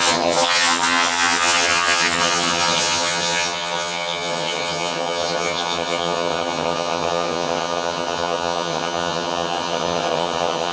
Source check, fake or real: fake